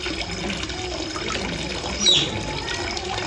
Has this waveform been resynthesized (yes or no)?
no